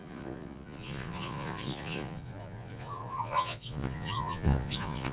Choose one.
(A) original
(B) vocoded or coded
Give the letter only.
B